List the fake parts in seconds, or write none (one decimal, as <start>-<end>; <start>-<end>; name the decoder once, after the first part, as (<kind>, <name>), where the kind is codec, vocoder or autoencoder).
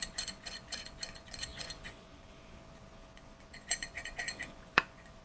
0.0-5.2 (vocoder, Vocos)